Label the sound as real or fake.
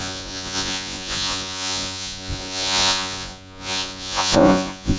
fake